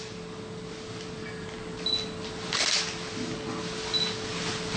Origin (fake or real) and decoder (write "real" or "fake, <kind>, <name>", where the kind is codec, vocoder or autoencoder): real